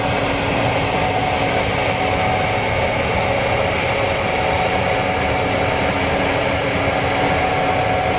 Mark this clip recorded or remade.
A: recorded